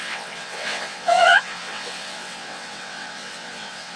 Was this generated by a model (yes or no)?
yes